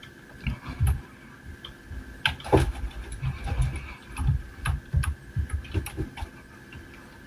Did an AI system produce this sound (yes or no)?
no